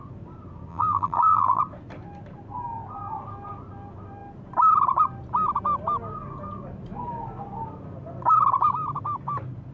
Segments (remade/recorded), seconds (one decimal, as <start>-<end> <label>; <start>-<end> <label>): 0.0-0.7 recorded; 0.7-1.6 remade; 1.6-9.7 recorded